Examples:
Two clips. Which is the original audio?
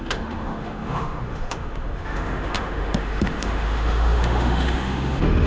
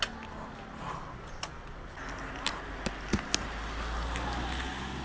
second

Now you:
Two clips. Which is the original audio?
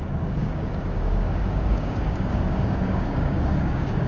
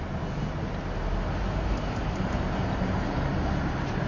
second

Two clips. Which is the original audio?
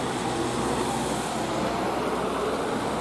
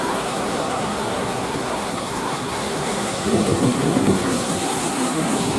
first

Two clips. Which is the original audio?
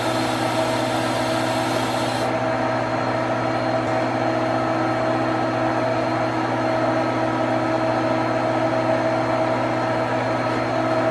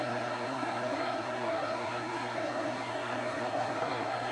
first